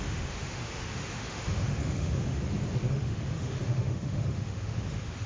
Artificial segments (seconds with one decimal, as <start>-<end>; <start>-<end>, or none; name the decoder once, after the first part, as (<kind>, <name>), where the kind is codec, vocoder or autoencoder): 0.0-2.4 (autoencoder, DAC-VAE); 2.9-5.3